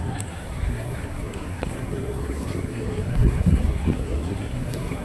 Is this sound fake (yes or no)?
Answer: yes